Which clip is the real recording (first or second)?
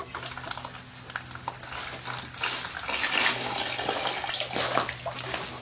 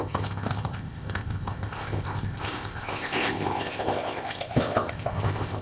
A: first